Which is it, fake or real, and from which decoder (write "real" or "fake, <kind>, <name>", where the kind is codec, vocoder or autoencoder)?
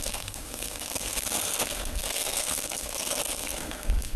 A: fake, codec, SNAC